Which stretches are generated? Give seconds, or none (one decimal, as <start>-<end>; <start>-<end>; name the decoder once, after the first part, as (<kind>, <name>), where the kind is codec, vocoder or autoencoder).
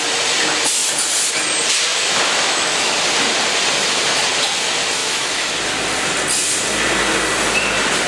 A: 1.9-2.9 (autoencoder, DAC-VAE); 5.0-5.5